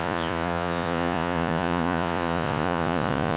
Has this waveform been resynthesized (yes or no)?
yes